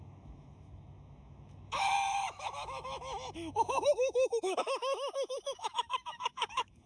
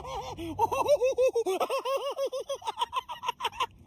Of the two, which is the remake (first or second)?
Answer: first